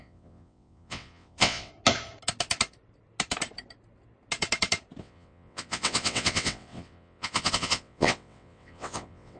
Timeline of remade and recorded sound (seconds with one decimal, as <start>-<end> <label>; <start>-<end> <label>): 0.0-1.7 remade; 1.7-5.0 recorded; 5.0-9.4 remade